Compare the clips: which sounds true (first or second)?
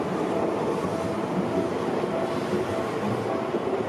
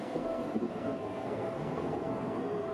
first